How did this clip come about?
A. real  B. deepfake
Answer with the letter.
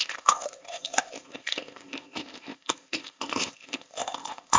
B